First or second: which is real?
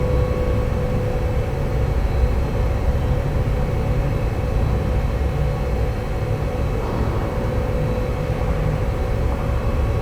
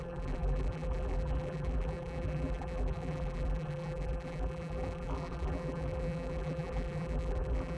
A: first